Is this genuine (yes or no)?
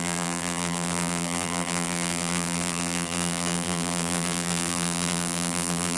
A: no